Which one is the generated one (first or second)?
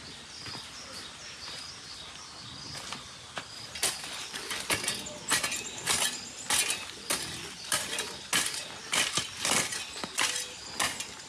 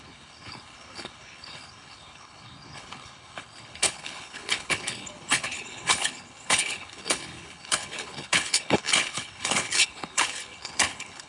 second